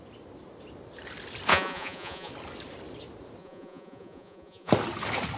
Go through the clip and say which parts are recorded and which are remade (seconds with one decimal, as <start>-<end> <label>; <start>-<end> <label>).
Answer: 0.0-1.5 recorded; 1.5-2.3 remade; 2.3-3.4 recorded; 3.4-4.7 remade; 4.7-5.4 recorded